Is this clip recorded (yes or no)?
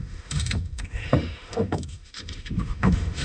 no